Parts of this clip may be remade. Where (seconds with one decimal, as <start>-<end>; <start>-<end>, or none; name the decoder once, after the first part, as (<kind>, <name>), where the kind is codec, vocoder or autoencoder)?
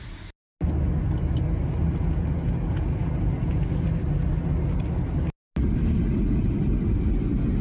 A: none